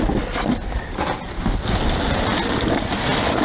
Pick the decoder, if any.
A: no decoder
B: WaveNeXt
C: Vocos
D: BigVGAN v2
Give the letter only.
A